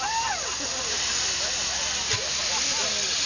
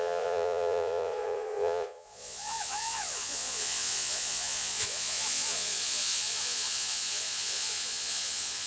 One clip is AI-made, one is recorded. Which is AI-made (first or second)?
second